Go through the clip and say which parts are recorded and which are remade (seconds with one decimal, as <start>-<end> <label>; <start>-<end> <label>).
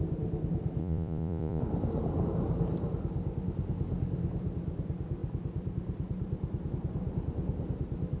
0.0-0.8 recorded; 0.8-1.6 remade; 1.6-8.2 recorded